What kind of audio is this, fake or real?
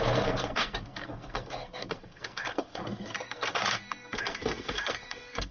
fake